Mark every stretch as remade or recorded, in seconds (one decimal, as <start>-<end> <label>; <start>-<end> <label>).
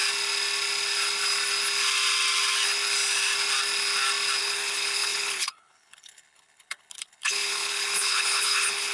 0.0-4.4 recorded; 4.4-8.9 remade